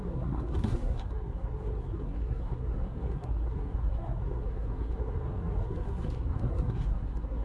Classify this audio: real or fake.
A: fake